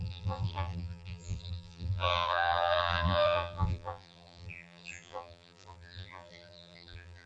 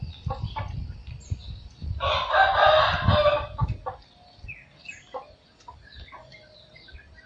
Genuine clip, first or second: second